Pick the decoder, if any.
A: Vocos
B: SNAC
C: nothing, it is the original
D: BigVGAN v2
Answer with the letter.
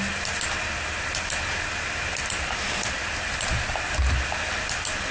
C